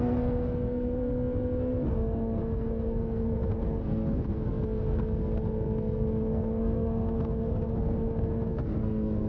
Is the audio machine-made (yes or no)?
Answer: yes